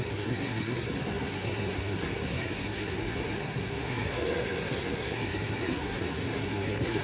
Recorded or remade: remade